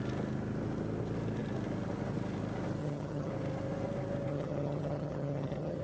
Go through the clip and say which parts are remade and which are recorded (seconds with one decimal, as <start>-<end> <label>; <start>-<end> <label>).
0.0-2.8 recorded; 2.8-3.3 remade; 3.3-4.3 recorded; 4.3-5.8 remade